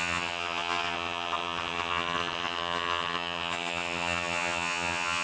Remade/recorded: remade